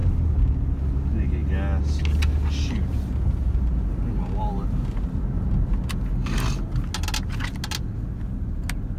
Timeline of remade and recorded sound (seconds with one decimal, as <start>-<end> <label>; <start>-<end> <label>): 0.0-9.0 recorded